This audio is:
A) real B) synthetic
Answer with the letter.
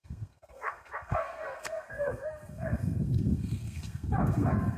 B